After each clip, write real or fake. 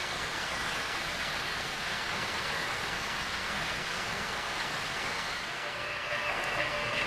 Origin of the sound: fake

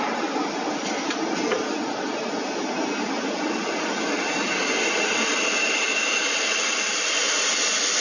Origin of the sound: real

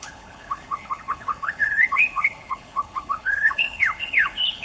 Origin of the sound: fake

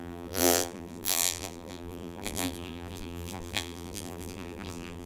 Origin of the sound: fake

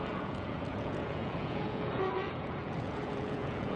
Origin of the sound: fake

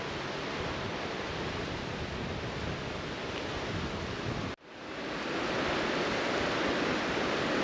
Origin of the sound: real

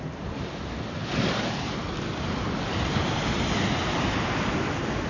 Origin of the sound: real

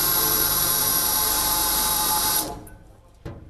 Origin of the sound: fake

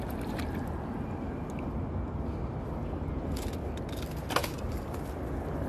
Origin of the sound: real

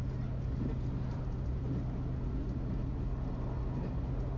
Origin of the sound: real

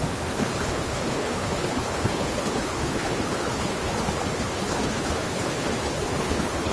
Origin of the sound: fake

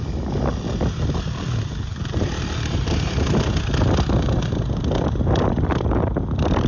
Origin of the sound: real